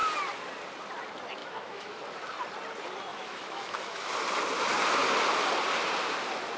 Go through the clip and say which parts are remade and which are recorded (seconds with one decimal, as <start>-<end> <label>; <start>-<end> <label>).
0.0-1.4 recorded; 1.4-2.0 remade; 2.0-3.1 recorded; 3.1-4.1 remade; 4.1-6.6 recorded